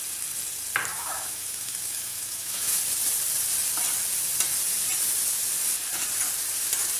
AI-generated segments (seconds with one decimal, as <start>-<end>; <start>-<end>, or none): 0.9-2.8